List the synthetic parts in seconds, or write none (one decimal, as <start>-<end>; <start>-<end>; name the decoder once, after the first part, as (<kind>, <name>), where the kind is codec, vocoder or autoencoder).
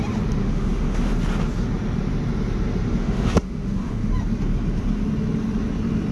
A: 0.4-1.1 (autoencoder, DAC-VAE); 3.0-4.1